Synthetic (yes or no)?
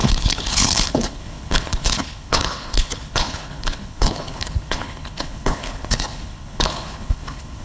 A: yes